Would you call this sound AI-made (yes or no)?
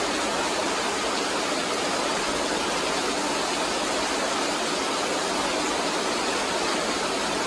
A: no